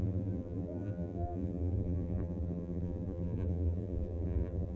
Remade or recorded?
remade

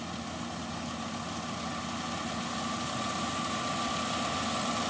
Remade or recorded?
remade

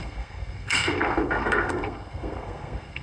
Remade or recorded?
remade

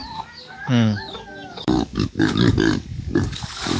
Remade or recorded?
remade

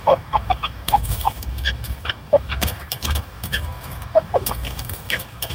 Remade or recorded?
remade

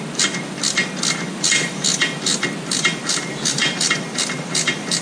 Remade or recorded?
recorded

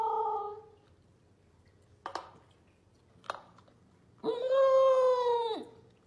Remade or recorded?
recorded